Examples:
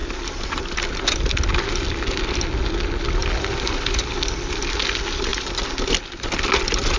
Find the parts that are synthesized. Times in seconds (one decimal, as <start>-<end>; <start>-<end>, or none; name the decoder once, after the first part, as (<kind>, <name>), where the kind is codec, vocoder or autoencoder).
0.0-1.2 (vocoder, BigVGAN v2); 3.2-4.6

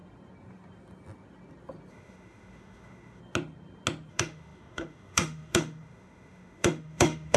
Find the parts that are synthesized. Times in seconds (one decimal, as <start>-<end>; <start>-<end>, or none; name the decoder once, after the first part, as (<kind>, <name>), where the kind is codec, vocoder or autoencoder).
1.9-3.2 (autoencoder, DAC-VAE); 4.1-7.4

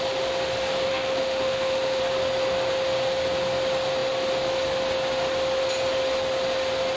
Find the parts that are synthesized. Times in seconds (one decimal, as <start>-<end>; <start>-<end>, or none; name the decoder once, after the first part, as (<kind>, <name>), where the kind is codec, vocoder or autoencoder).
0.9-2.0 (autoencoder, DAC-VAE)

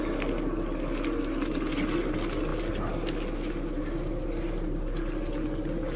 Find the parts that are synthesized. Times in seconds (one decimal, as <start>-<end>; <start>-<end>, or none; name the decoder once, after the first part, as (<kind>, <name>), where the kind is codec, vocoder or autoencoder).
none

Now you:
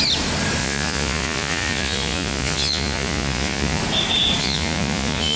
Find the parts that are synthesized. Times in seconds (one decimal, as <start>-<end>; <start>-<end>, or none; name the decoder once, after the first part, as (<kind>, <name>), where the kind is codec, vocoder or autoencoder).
0.6-3.8 (vocoder, Vocos); 4.4-5.4

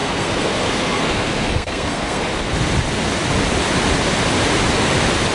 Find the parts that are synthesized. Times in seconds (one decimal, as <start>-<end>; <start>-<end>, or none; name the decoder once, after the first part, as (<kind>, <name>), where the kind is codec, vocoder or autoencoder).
0.0-2.2 (codec, SNAC)